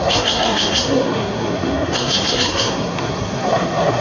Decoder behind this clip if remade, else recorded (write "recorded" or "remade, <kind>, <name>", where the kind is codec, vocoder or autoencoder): remade, codec, SNAC